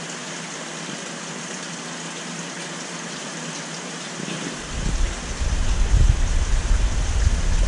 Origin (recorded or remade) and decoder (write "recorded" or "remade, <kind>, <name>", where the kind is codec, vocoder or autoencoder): recorded